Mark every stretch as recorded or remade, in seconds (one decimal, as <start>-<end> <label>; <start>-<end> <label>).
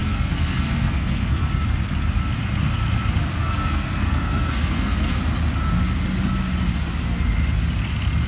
0.0-1.5 remade; 1.5-3.4 recorded; 3.4-5.2 remade; 5.2-8.3 recorded